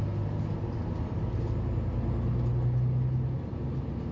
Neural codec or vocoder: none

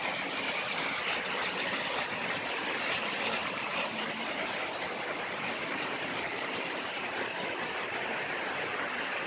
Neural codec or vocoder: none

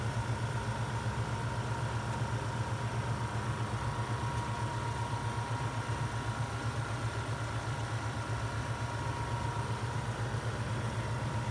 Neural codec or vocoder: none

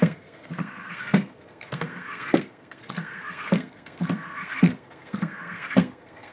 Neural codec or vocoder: codec, SNAC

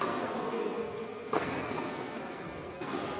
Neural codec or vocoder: codec, SNAC